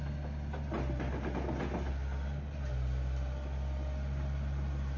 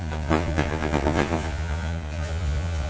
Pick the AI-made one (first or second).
second